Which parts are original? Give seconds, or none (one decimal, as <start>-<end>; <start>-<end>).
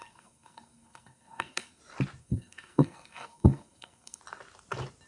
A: 1.8-2.2; 4.2-5.1